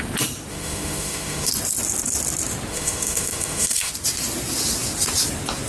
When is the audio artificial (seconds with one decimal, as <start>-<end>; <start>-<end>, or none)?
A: 0.5-1.5; 2.7-3.9